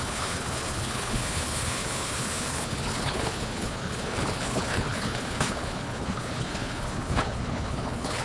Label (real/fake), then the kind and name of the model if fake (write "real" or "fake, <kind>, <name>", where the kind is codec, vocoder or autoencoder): fake, codec, HILCodec